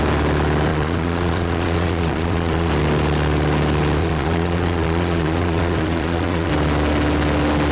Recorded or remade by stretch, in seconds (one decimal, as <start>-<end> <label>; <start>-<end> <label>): 0.0-0.7 recorded; 0.7-2.7 remade; 2.7-4.0 recorded; 4.0-6.5 remade; 6.5-7.7 recorded